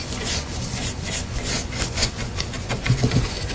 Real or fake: fake